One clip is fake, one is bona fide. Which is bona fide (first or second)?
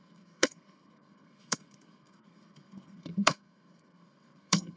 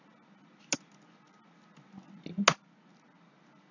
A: second